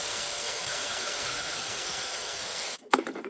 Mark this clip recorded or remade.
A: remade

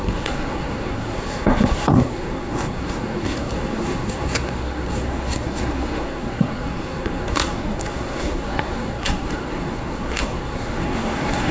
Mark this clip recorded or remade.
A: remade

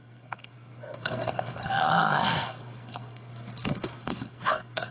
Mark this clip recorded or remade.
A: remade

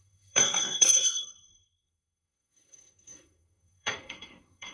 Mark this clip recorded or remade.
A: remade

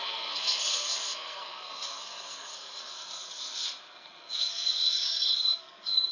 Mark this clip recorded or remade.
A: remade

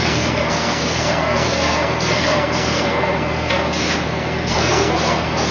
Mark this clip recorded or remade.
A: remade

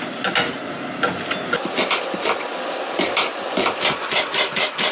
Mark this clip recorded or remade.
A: recorded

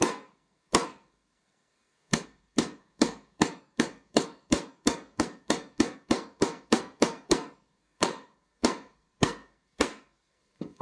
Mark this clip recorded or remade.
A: remade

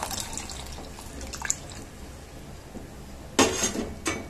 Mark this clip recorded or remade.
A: recorded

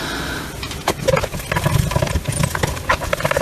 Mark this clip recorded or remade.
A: recorded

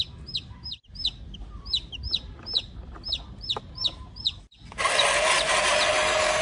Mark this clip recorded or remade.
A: recorded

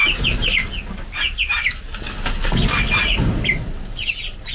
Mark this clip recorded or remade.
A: recorded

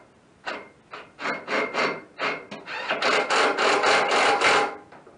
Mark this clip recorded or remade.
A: recorded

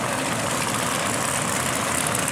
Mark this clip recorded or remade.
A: recorded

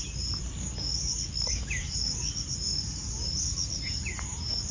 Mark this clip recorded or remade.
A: recorded